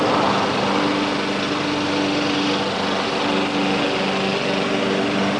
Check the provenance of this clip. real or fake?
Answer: real